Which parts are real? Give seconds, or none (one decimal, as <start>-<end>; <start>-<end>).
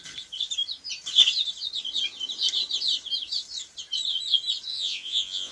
0.0-4.7